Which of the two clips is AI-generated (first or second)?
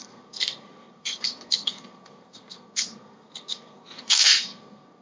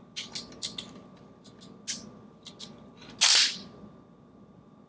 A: first